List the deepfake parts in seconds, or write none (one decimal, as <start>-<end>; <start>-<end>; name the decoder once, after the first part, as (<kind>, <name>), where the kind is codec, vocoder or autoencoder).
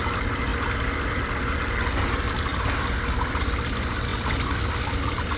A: none